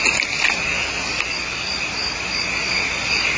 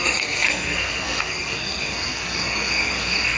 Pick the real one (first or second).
first